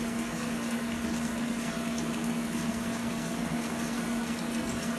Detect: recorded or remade remade